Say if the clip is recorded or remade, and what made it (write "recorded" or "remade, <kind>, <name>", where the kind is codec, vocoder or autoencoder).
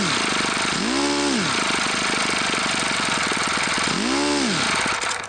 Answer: recorded